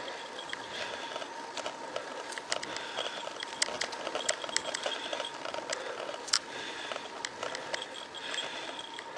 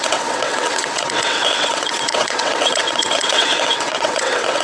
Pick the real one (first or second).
first